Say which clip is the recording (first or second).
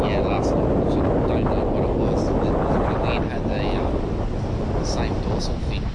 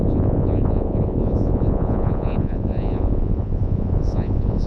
first